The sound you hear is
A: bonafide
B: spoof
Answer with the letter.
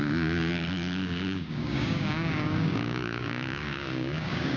B